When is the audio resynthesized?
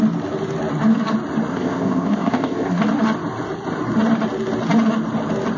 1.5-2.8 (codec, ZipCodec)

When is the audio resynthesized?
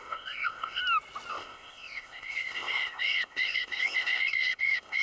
0.0-0.8 (codec, ZipCodec); 1.3-5.0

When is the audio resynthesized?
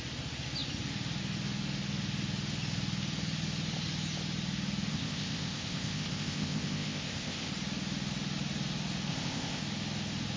4.9-7.5 (codec, ZipCodec); 9.1-9.6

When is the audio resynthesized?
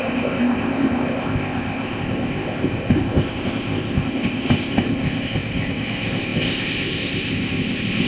0.0-8.1 (codec, ZipCodec)